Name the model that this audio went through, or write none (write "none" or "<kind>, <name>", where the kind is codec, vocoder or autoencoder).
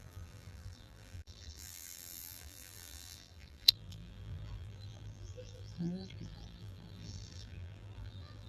vocoder, BigVGAN v2